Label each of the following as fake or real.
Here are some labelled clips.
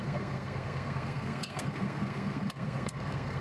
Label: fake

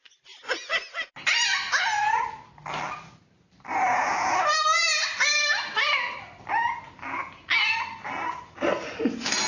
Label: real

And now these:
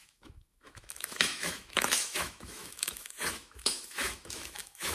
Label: fake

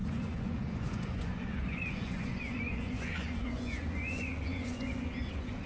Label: fake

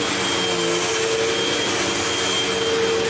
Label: real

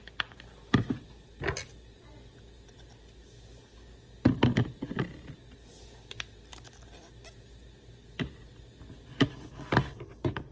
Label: real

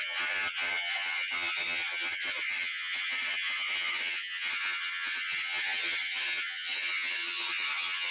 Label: fake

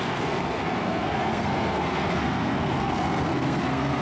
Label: fake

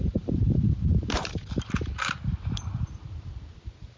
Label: fake